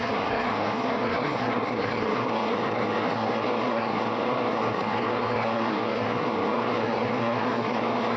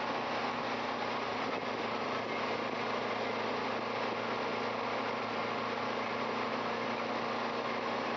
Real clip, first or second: second